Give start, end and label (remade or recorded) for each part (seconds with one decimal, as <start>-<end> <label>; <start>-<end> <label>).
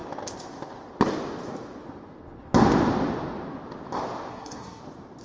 0.0-4.3 recorded; 4.3-4.8 remade; 4.8-5.2 recorded